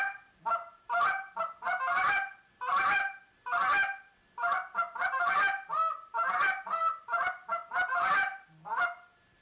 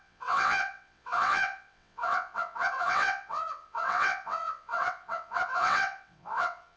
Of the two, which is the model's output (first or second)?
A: second